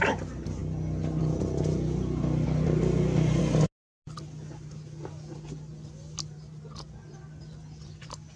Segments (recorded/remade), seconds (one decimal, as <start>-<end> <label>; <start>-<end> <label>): 0.0-8.4 recorded